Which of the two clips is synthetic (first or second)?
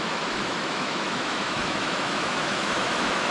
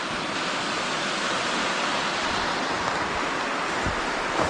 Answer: first